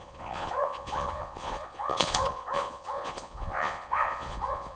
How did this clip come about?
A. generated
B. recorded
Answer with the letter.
A